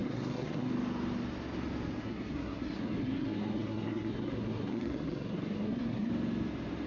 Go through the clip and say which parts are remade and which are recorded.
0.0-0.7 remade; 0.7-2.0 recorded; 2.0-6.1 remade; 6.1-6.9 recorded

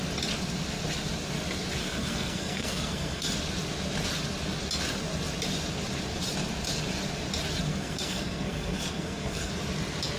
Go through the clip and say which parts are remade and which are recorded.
0.0-1.8 recorded; 1.8-3.3 remade; 3.3-7.7 recorded; 7.7-9.5 remade; 9.5-10.2 recorded

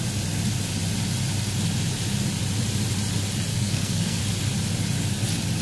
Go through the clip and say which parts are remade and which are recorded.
0.0-3.5 recorded; 3.5-4.2 remade; 4.2-5.6 recorded

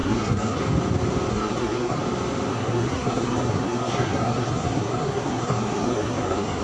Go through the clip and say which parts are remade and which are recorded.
0.0-0.6 remade; 0.6-1.3 recorded; 1.3-2.0 remade; 2.0-2.5 recorded; 2.5-6.6 remade

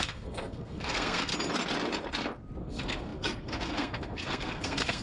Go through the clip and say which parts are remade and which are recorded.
0.0-1.3 remade; 1.3-2.6 recorded; 2.6-5.0 remade

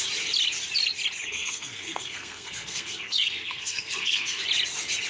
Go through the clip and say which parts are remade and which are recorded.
0.0-1.3 recorded; 1.3-4.4 remade; 4.4-5.1 recorded